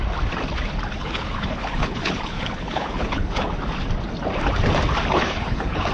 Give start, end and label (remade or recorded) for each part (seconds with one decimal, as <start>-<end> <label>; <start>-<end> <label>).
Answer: 0.0-1.0 recorded; 1.0-3.5 remade; 3.5-5.1 recorded; 5.1-5.9 remade